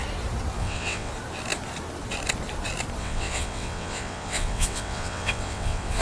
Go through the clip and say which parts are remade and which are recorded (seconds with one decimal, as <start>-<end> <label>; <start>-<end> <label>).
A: 0.0-0.6 recorded; 0.6-1.1 remade; 1.1-3.0 recorded; 3.0-6.0 remade